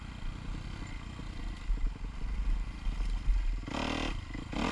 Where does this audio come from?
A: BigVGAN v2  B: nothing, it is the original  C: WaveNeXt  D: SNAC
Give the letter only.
B